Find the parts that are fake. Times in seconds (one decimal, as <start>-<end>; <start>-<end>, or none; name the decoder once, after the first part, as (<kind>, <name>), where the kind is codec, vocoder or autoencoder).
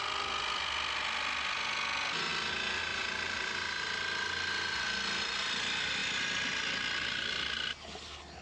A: none